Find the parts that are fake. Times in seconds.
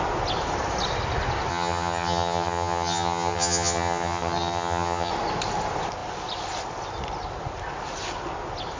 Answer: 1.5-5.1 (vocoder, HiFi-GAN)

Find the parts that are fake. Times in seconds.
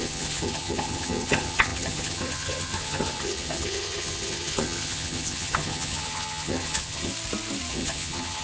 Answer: 0.0-7.1 (vocoder, HiFi-GAN); 7.7-8.4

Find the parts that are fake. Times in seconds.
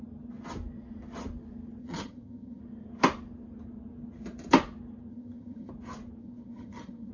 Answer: 1.8-2.6 (vocoder, HiFi-GAN); 5.1-5.7; 6.2-7.1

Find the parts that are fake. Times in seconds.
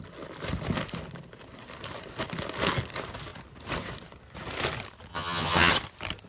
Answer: 5.1-5.7 (vocoder, HiFi-GAN)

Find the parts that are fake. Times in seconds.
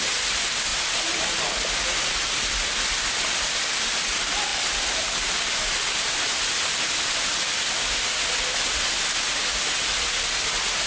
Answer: none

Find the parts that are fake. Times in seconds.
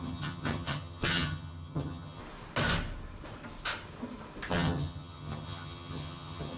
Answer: 0.0-2.2 (vocoder, HiFi-GAN); 4.5-6.6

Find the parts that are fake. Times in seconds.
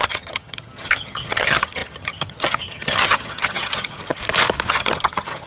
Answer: 0.0-4.2 (vocoder, HiFi-GAN); 4.7-5.5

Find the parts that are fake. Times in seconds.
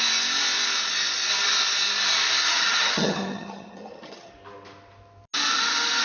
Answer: 2.5-4.3 (vocoder, HiFi-GAN)